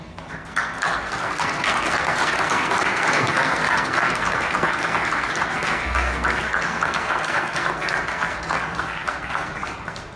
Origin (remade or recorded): remade